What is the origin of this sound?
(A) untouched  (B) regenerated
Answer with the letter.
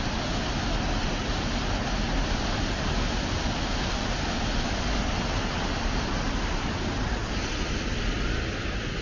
A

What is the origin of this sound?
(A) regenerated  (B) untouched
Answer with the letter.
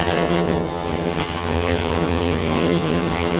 A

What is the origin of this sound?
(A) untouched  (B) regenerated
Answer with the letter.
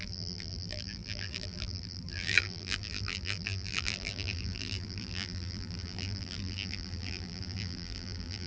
B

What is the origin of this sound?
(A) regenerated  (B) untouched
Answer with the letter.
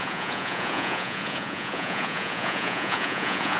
A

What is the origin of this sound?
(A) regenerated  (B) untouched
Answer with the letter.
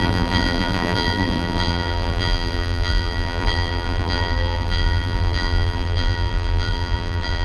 A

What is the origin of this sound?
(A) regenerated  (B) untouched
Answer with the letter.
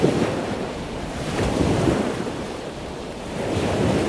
A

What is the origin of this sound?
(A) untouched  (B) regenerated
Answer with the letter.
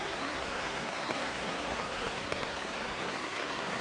B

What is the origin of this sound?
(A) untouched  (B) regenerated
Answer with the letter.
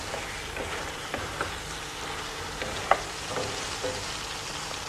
B